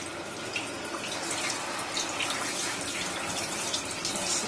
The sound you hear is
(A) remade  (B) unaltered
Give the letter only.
B